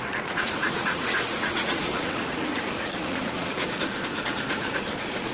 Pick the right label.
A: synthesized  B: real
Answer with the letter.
A